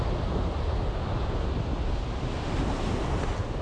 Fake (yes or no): no